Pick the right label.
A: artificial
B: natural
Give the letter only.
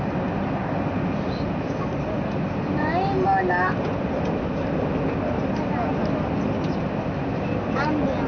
B